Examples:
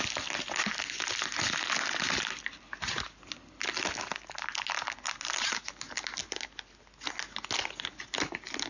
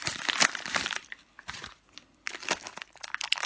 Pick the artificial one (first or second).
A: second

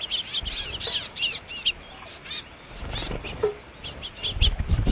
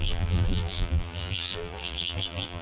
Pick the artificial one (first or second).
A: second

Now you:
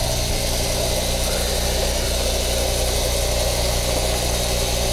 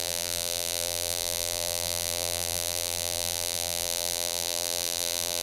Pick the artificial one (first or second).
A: second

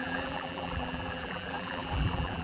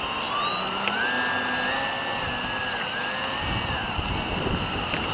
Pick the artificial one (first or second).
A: first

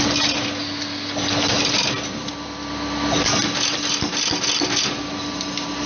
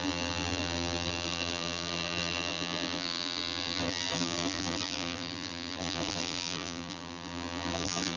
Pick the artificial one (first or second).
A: second